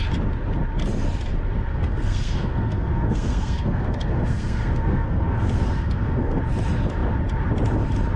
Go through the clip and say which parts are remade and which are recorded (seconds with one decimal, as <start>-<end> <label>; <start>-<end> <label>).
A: 0.0-1.7 recorded; 1.7-6.4 remade; 6.4-8.2 recorded